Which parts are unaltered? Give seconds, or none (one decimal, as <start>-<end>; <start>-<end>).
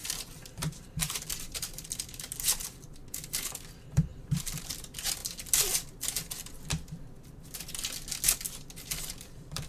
3.0-3.5; 5.2-9.1